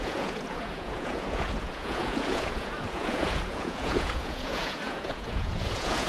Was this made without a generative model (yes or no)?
no